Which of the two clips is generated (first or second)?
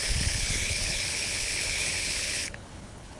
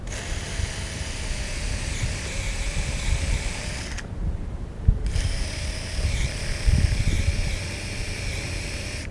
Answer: first